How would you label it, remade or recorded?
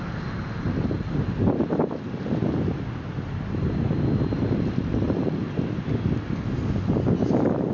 recorded